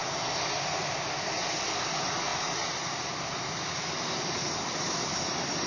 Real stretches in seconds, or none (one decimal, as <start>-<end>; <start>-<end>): 0.0-5.7